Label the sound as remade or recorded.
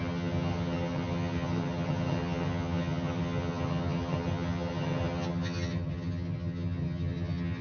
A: remade